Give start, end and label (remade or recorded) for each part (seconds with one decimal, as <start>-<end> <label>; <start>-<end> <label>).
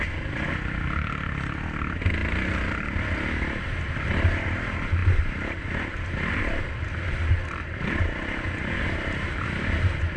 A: 0.0-10.2 recorded